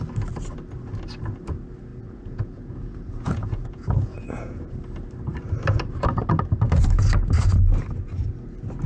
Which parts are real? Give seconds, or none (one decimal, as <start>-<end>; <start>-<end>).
0.0-1.9; 4.7-8.9